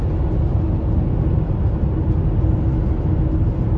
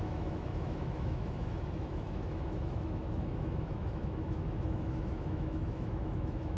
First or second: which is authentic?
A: first